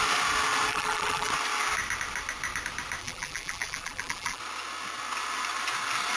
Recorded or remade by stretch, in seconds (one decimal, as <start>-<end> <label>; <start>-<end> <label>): 0.0-0.7 recorded; 0.7-1.3 remade; 1.3-3.0 recorded; 3.0-4.4 remade; 4.4-6.2 recorded